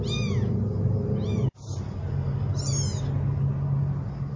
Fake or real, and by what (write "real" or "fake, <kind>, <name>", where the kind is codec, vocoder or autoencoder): real